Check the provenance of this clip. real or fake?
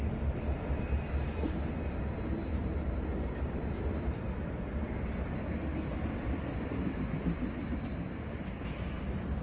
fake